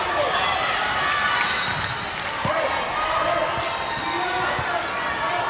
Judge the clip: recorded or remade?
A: recorded